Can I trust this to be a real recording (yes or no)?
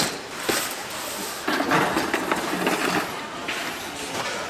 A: yes